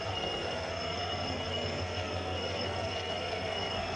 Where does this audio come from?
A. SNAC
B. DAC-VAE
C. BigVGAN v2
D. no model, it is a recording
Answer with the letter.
A